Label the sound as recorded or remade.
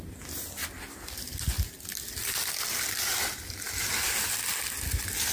recorded